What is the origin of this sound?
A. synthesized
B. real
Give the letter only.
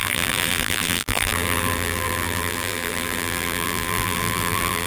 A